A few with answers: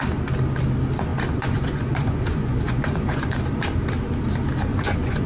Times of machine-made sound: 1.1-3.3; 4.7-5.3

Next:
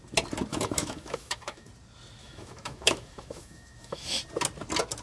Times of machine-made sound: 0.5-1.7; 2.2-4.2

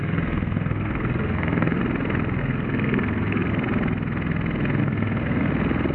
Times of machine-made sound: 0.0-1.8; 2.4-3.5; 4.8-5.5

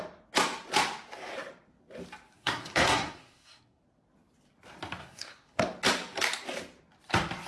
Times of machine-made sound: 2.3-3.8; 5.0-5.6

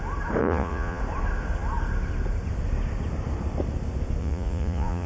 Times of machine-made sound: 0.4-1.0; 4.2-5.1

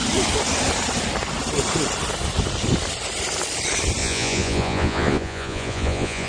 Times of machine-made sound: 4.0-6.3

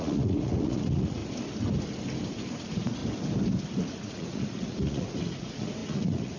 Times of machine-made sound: 0.0-1.2; 2.3-3.0; 3.8-6.4